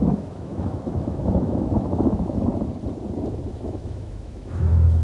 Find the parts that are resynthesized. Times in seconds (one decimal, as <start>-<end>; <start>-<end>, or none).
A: 0.0-2.5; 3.5-5.0